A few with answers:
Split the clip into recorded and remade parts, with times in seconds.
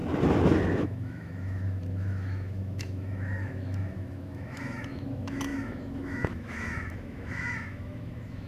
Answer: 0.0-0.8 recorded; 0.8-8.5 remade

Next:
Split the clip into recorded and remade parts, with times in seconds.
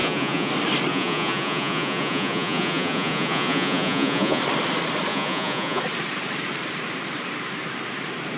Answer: 0.0-0.5 remade; 0.5-0.9 recorded; 0.9-4.4 remade; 4.4-5.1 recorded; 5.1-5.8 remade; 5.8-8.4 recorded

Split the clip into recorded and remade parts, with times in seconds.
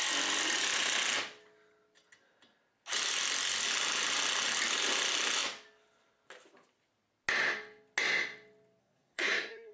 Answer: 0.0-8.8 recorded; 8.8-9.7 remade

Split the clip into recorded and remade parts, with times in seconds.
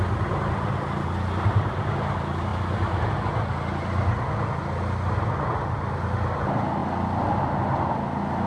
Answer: 0.0-8.5 recorded